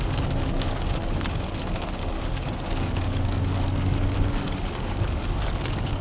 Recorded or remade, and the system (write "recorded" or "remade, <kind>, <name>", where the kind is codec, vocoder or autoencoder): remade, codec, DAC